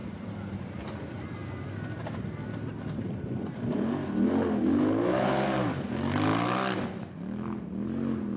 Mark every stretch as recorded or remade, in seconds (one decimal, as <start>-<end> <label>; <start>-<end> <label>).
0.0-8.4 recorded